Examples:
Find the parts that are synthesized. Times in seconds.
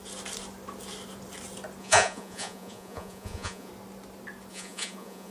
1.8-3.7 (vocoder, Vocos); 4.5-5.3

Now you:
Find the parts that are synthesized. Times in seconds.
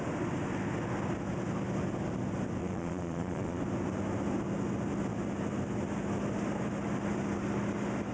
2.6-3.6 (vocoder, Vocos)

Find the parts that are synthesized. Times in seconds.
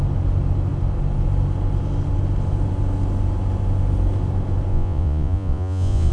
4.7-6.1 (vocoder, Vocos)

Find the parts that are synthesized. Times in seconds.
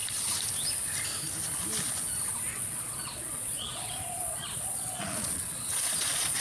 2.5-6.4 (vocoder, Vocos)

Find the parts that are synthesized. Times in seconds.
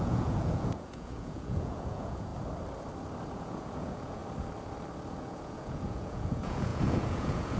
0.0-2.3 (vocoder, Vocos); 3.3-4.2; 5.2-7.6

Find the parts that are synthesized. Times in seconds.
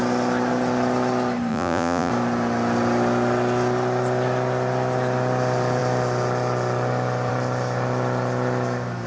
1.5-2.1 (vocoder, Vocos)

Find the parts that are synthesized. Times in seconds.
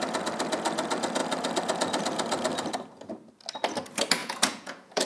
4.2-5.1 (vocoder, Vocos)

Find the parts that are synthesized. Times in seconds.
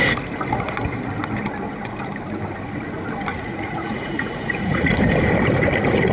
3.3-4.9 (vocoder, Vocos)